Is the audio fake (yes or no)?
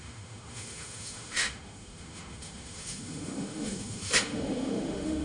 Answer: yes